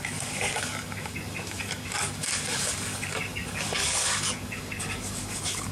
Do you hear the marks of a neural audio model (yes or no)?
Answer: yes